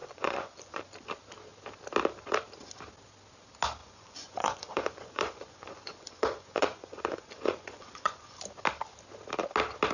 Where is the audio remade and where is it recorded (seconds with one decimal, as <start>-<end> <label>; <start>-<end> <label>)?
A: 0.0-0.8 remade; 0.8-3.8 recorded; 3.8-8.4 remade; 8.4-9.9 recorded